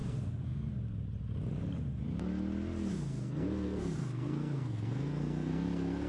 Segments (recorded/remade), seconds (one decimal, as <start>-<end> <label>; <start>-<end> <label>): 0.0-0.7 remade; 0.7-2.9 recorded; 2.9-6.1 remade